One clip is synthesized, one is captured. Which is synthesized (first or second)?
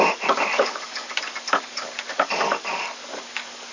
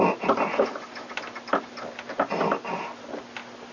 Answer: first